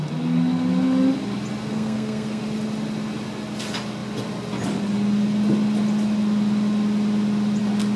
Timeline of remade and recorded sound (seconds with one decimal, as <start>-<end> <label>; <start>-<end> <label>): 0.0-1.7 recorded; 1.7-2.4 remade; 2.4-8.0 recorded